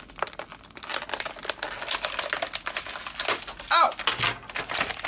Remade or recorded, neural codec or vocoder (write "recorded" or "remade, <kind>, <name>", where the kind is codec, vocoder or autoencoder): recorded